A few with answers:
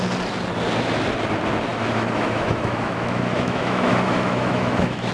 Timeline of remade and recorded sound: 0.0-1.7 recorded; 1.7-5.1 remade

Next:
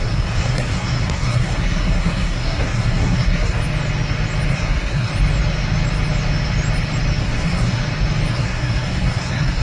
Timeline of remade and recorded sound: 0.0-3.6 remade; 3.6-4.5 recorded; 4.5-5.1 remade; 5.1-7.2 recorded; 7.2-7.8 remade; 7.8-8.3 recorded; 8.3-9.6 remade

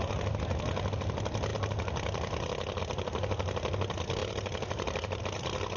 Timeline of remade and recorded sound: 0.0-4.2 recorded; 4.2-5.2 remade; 5.2-5.8 recorded